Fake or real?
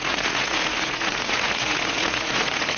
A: fake